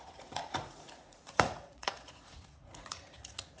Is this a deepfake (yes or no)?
yes